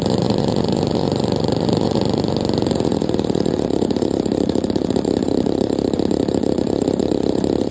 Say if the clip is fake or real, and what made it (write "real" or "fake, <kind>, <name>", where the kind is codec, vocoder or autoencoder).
fake, vocoder, Vocos